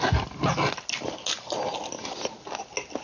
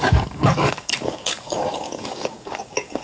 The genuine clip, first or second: first